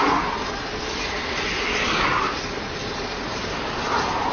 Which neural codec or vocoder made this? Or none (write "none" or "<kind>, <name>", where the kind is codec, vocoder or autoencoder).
none